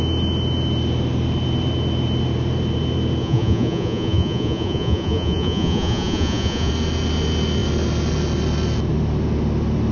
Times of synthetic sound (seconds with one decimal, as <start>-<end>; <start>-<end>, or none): 3.2-6.7